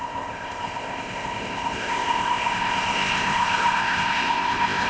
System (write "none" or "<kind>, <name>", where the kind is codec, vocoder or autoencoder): codec, ZipCodec